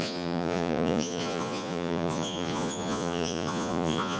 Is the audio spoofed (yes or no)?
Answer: yes